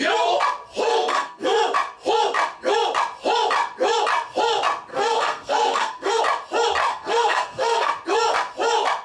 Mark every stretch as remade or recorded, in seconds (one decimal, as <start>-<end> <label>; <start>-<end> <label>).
0.0-0.8 recorded; 0.8-1.6 remade; 1.6-4.9 recorded; 4.9-6.2 remade; 6.2-6.9 recorded; 6.9-7.9 remade; 7.9-9.0 recorded